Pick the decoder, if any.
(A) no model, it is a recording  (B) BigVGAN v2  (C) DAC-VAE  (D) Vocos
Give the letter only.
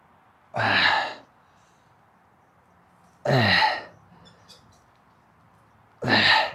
A